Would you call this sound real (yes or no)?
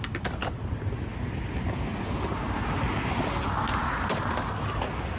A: yes